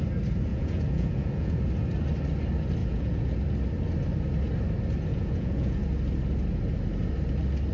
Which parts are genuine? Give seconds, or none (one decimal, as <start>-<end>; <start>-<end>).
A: 0.0-0.5; 1.7-2.8; 3.3-5.1; 5.8-7.7